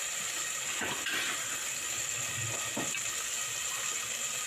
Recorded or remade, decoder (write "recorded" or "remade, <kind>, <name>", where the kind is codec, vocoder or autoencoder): recorded